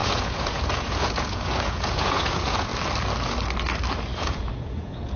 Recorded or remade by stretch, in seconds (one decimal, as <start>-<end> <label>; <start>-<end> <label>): 0.0-2.7 remade; 2.7-4.2 recorded; 4.2-5.2 remade